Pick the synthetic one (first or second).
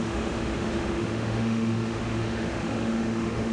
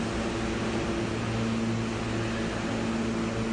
first